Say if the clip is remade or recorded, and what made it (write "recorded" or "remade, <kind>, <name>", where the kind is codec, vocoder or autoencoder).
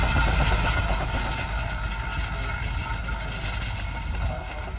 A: recorded